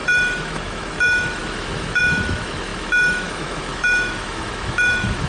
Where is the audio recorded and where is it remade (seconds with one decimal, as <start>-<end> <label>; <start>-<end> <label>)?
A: 0.0-5.3 remade

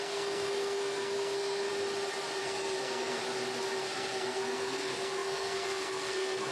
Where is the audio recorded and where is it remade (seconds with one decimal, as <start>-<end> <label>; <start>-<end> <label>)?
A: 0.0-1.7 remade; 1.7-2.4 recorded; 2.4-3.2 remade; 3.2-3.8 recorded; 3.8-6.5 remade

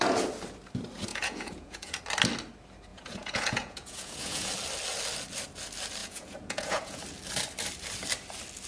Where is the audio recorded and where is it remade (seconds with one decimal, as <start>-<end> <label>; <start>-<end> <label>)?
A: 0.0-1.1 recorded; 1.1-2.0 remade; 2.0-2.9 recorded; 2.9-4.5 remade; 4.5-6.0 recorded; 6.0-7.0 remade; 7.0-8.7 recorded

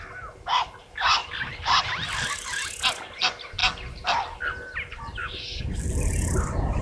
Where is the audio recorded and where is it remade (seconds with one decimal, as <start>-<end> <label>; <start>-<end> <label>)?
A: 0.0-6.8 recorded

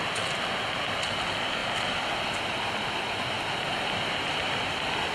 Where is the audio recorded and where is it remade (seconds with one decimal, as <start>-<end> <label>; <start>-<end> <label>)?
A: 0.0-5.1 recorded

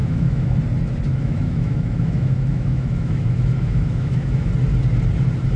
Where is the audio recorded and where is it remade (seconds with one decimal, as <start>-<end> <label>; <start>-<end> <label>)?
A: 0.0-0.6 remade; 0.6-1.1 recorded; 1.1-4.5 remade; 4.5-5.6 recorded